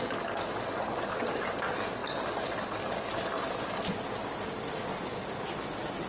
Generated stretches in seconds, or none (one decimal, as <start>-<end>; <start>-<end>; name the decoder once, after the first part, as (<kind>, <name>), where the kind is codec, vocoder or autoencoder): none